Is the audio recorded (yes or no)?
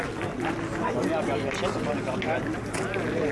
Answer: yes